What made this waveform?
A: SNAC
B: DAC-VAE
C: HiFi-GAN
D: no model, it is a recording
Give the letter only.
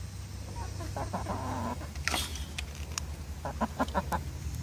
D